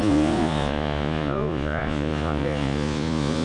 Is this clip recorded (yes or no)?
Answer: no